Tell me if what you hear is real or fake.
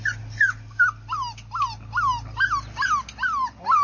real